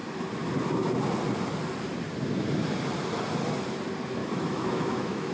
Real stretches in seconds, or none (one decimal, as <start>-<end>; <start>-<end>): 0.0-4.2